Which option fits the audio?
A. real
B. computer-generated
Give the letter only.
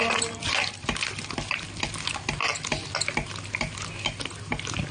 A